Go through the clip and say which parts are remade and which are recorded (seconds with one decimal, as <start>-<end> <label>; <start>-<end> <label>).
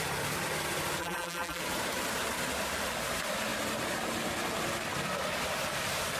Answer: 0.0-1.0 recorded; 1.0-1.6 remade; 1.6-6.2 recorded